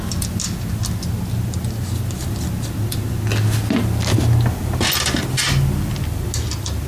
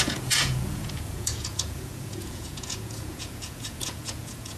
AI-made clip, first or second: second